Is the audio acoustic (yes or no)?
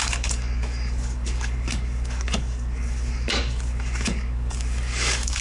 no